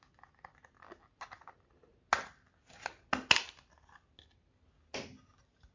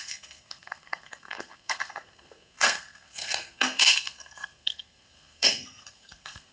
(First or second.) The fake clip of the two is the second